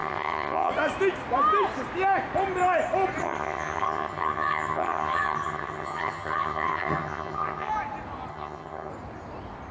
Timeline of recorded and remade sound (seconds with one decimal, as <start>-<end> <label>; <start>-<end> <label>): 0.0-0.7 remade; 0.7-3.2 recorded; 3.2-7.7 remade; 7.7-8.3 recorded; 8.3-8.9 remade; 8.9-9.7 recorded